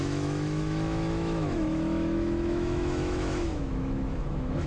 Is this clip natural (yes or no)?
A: no